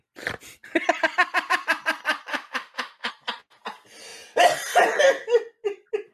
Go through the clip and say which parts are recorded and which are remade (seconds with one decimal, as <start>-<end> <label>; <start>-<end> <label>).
0.0-2.3 recorded; 2.3-3.1 remade; 3.1-6.1 recorded